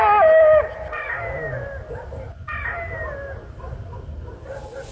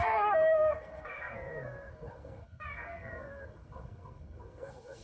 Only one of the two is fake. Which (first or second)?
second